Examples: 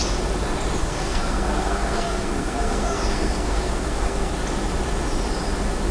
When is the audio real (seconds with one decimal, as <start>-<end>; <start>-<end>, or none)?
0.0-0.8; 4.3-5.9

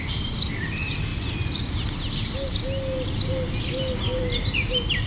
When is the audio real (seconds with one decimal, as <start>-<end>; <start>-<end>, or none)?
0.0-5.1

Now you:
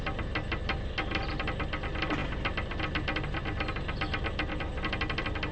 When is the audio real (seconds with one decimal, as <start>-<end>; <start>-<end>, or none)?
0.0-5.5

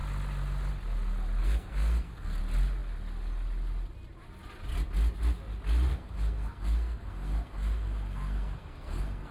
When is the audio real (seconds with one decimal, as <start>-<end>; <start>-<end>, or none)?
0.0-1.4; 2.4-5.9

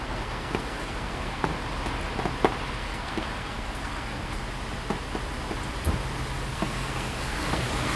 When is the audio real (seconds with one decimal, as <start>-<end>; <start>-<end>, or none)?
1.5-2.7; 4.4-6.5